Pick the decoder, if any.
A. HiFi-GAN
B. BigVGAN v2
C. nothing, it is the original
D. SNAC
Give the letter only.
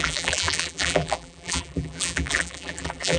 B